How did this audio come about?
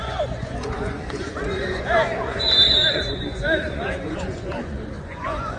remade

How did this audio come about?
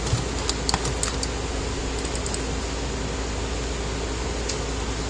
recorded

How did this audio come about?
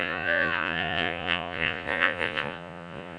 remade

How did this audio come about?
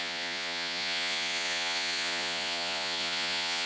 remade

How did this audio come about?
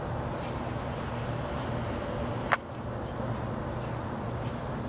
recorded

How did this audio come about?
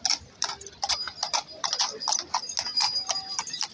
recorded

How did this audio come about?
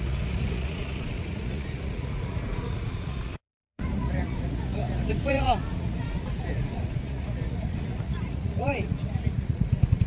remade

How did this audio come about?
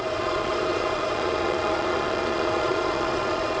remade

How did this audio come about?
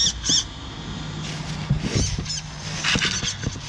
recorded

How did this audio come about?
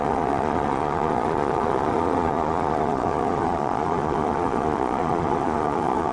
remade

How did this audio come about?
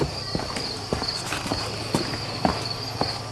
recorded